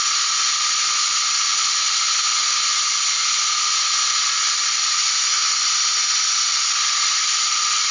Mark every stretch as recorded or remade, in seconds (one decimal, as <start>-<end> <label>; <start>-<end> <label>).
0.0-1.5 remade; 1.5-4.2 recorded; 4.2-7.9 remade

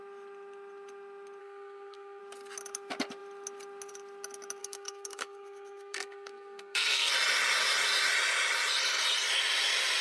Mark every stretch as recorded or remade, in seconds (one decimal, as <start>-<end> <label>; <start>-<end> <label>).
0.0-1.4 recorded; 1.4-2.2 remade; 2.2-4.6 recorded; 4.6-7.1 remade; 7.1-10.0 recorded

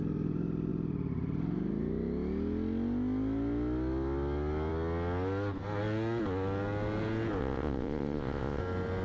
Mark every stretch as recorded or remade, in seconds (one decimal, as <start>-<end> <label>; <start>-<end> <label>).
0.0-7.4 recorded; 7.4-8.6 remade; 8.6-9.0 recorded